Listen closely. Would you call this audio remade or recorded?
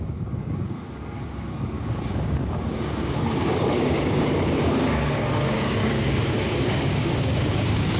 remade